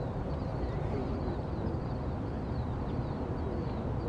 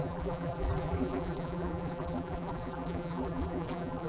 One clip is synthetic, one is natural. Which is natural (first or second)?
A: first